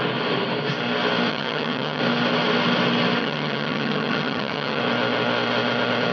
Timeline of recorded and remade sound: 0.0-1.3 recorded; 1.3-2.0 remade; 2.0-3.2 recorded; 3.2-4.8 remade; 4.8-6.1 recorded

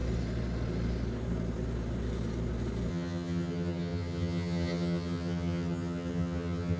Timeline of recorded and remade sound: 0.0-2.9 recorded; 2.9-6.8 remade

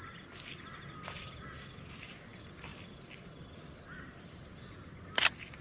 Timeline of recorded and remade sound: 0.0-5.6 recorded